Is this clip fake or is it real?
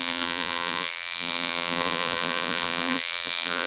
fake